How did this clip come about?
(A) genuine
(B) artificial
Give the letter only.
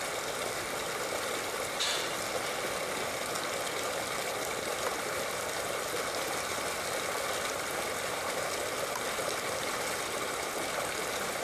A